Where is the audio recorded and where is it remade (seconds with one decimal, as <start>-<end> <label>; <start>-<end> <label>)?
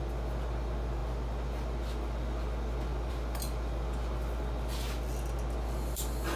0.0-6.4 recorded